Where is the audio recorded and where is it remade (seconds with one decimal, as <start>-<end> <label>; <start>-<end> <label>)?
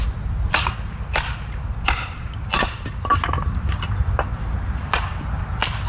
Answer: 0.0-5.9 recorded